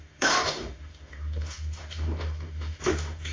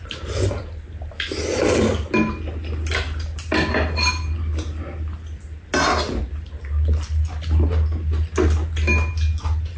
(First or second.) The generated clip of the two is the first